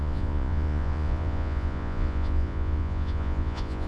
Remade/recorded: remade